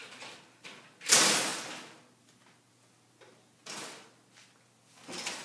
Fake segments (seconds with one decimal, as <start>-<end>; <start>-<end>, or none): none